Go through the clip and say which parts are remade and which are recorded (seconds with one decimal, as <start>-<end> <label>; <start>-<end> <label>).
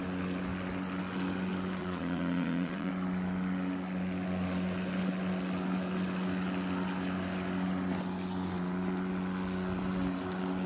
0.0-1.8 recorded; 1.8-2.9 remade; 2.9-10.7 recorded